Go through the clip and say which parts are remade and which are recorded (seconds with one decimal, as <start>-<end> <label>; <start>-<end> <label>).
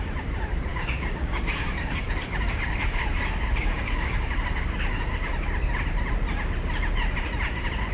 0.0-0.7 recorded; 0.7-5.3 remade; 5.3-7.9 recorded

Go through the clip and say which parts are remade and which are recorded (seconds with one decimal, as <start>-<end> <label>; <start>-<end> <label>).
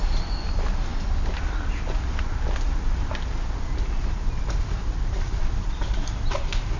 0.0-6.8 recorded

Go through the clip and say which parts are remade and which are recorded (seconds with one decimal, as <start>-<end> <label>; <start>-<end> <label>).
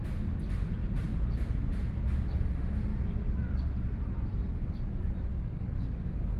0.0-5.3 recorded; 5.3-5.9 remade; 5.9-6.4 recorded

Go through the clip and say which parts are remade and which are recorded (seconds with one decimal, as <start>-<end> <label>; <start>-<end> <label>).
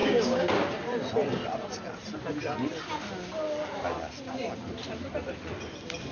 0.0-0.5 remade; 0.5-6.1 recorded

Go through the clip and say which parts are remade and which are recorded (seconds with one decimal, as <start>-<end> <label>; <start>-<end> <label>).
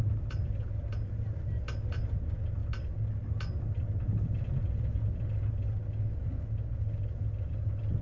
0.0-8.0 recorded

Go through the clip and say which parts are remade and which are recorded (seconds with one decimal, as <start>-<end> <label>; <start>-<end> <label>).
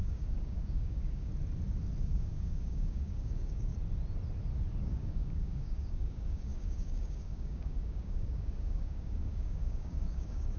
0.0-1.3 remade; 1.3-2.0 recorded; 2.0-3.7 remade; 3.7-4.8 recorded; 4.8-10.6 remade